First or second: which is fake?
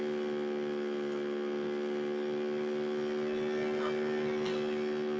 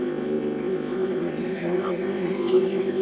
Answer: second